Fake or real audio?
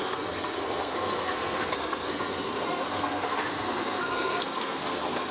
fake